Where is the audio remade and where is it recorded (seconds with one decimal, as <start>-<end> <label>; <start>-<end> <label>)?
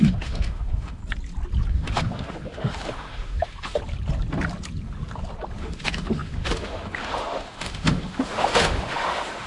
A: 0.0-1.0 remade; 1.0-1.7 recorded; 1.7-3.8 remade; 3.8-5.6 recorded; 5.6-9.5 remade